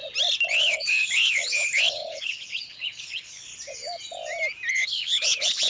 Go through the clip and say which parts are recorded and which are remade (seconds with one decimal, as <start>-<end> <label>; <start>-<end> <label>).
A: 0.0-0.6 recorded; 0.6-3.5 remade; 3.5-4.7 recorded; 4.7-5.7 remade